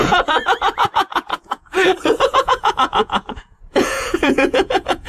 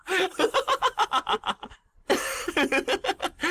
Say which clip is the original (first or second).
second